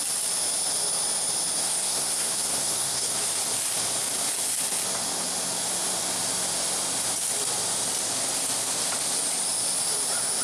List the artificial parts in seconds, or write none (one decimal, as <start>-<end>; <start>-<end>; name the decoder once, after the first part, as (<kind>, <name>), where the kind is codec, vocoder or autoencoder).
1.6-3.2 (codec, SNAC)